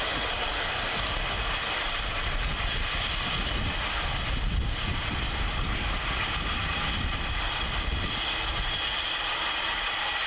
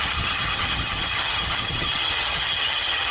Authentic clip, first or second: first